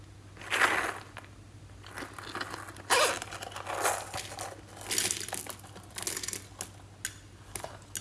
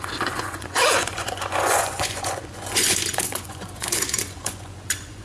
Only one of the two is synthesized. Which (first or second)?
second